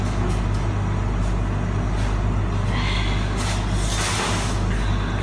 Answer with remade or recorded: recorded